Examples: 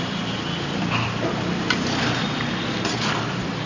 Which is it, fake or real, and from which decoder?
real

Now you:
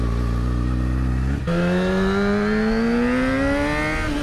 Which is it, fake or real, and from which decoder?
real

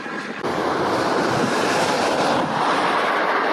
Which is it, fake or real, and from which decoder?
fake, vocoder, BigVGAN v2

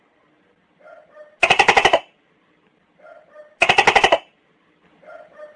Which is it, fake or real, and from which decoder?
real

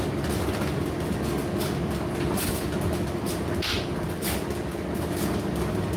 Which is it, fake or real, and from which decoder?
real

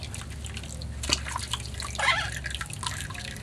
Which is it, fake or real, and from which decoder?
real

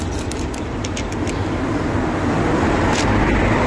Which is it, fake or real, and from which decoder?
fake, vocoder, BigVGAN v2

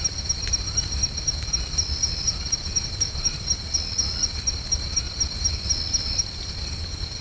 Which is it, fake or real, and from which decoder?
real